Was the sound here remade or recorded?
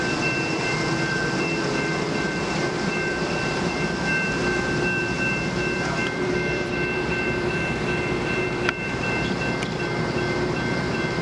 remade